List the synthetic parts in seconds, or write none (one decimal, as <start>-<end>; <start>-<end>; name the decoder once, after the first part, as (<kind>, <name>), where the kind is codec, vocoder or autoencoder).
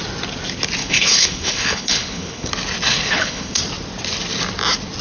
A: 0.8-2.5 (codec, HILCodec); 2.9-3.6